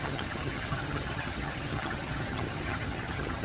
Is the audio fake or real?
fake